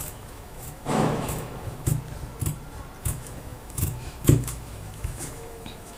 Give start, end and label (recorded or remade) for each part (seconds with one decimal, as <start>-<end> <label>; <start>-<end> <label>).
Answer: 0.0-1.9 remade; 1.9-3.0 recorded; 3.0-6.0 remade